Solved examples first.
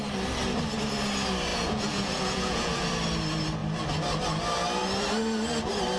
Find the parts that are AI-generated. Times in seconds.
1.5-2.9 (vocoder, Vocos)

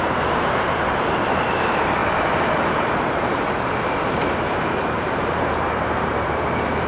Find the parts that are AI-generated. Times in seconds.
0.0-6.9 (vocoder, BigVGAN v2)

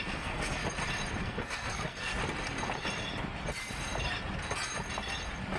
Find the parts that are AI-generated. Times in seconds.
0.0-0.6 (codec, SNAC); 1.2-2.1

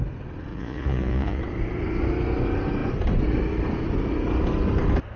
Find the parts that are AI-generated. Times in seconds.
0.5-1.4 (vocoder, Vocos)